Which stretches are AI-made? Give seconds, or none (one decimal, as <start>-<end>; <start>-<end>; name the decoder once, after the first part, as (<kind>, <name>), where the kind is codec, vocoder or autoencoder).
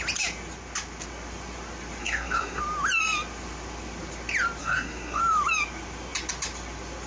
2.0-2.6 (codec, SNAC); 4.6-5.2